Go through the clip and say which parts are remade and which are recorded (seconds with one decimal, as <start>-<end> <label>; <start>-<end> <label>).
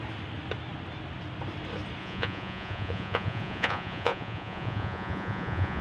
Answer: 0.0-2.0 recorded; 2.0-5.8 remade